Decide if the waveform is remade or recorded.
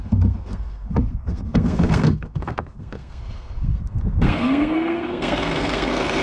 remade